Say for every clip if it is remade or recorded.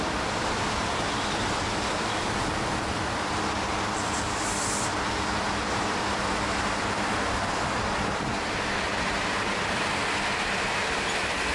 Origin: remade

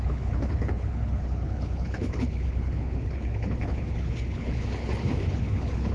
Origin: remade